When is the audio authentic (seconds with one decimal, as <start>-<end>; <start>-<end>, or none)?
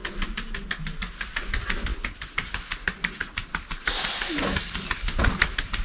0.0-1.9